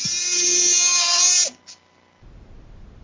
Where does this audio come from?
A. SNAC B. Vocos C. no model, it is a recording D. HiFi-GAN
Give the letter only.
C